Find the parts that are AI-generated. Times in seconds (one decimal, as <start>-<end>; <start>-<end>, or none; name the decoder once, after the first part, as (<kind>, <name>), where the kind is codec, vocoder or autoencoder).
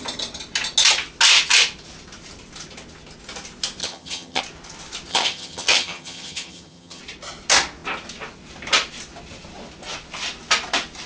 3.8-4.4 (vocoder, HiFi-GAN); 5.1-7.0